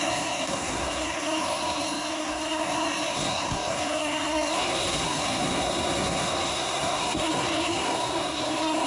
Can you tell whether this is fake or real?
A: fake